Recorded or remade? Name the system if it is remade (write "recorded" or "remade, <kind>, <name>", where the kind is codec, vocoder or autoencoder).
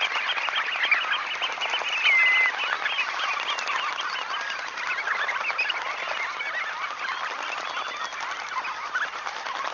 recorded